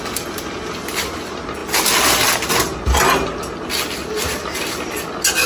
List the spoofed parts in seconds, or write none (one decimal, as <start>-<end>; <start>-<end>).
none